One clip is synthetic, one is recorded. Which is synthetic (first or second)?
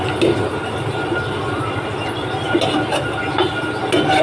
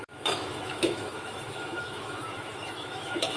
second